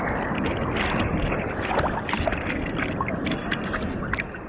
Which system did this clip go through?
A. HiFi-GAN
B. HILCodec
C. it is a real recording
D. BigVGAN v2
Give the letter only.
C